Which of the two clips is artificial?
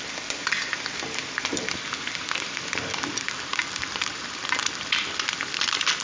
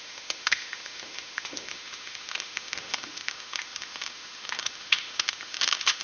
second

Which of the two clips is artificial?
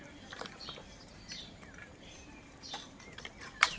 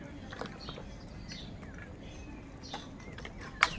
first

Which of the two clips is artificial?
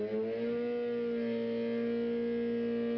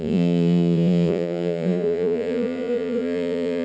second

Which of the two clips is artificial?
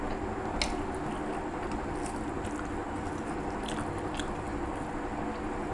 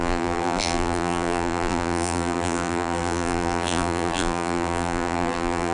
second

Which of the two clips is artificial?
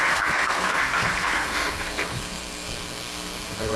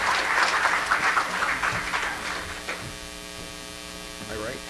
first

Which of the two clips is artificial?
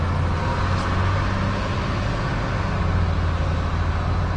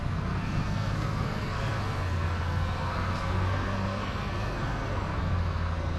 second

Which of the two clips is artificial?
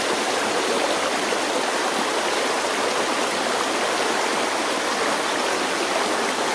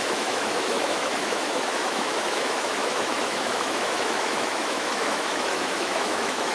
second